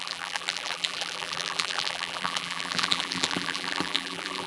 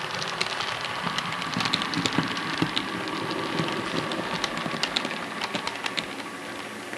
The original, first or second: second